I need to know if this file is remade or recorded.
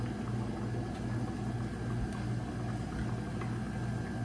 recorded